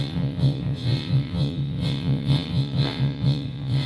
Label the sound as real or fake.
fake